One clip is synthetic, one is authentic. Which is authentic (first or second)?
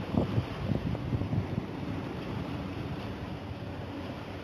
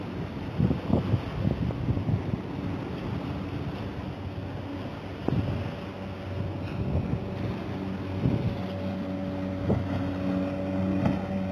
second